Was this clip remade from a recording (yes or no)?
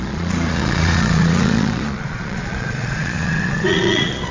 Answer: yes